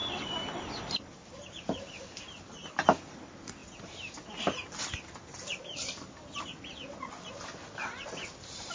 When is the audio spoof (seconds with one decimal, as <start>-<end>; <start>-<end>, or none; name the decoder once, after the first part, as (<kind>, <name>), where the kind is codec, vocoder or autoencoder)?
none